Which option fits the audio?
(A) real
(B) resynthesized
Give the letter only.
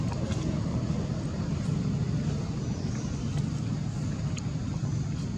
A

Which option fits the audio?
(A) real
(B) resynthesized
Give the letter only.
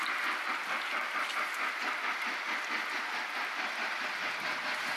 A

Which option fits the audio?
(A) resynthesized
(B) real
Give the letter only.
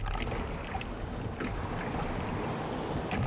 B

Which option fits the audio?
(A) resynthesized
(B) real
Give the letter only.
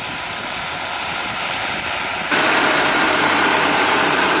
A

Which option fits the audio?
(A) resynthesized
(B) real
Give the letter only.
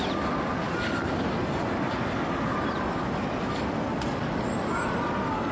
B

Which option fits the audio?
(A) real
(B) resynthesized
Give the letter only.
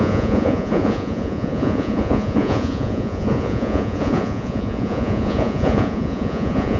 B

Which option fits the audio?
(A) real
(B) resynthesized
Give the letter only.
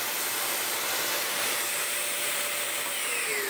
B